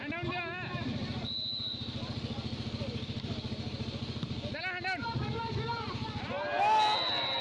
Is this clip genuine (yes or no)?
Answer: yes